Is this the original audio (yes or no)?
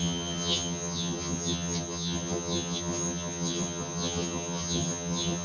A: no